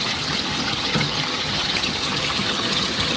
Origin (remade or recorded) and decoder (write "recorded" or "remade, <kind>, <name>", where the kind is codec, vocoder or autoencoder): remade, vocoder, HiFi-GAN